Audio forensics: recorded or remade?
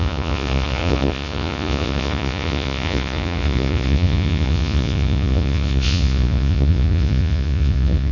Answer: remade